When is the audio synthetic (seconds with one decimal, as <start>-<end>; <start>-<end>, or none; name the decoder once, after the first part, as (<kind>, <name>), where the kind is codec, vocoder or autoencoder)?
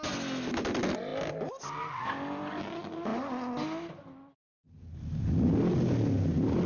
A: none